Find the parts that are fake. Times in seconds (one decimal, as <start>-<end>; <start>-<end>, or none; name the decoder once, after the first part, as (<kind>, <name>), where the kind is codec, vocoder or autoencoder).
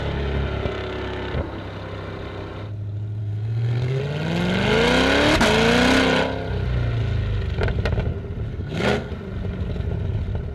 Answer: 3.2-4.0 (codec, SNAC); 8.5-9.1